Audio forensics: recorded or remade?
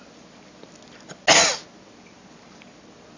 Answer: recorded